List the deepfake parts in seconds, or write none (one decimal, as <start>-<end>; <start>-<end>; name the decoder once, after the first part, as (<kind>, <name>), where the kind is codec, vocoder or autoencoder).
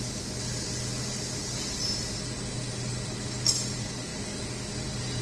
none